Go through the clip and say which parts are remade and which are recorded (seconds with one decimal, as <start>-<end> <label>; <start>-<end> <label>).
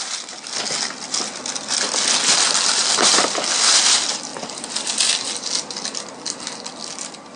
0.0-4.3 recorded; 4.3-4.9 remade; 4.9-7.4 recorded